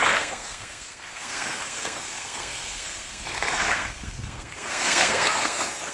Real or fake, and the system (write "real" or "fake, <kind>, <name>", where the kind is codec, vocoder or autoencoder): fake, codec, SNAC